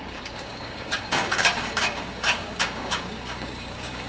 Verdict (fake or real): fake